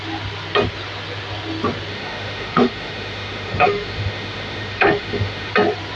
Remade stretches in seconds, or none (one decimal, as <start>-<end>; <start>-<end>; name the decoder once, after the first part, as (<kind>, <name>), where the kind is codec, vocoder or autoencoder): 1.9-5.5 (autoencoder, DAC-VAE)